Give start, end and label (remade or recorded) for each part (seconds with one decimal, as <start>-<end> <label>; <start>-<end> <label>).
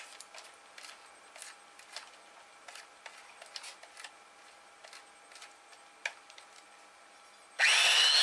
0.0-8.2 recorded